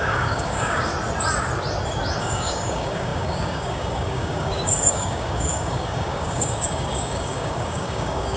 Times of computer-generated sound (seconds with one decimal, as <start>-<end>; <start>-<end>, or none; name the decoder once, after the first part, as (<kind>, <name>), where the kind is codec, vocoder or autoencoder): 0.0-0.9 (codec, DAC); 2.2-8.4